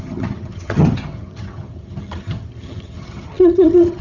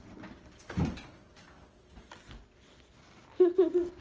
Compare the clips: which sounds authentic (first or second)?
second